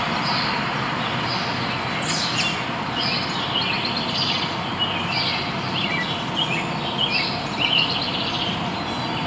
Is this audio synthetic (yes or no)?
no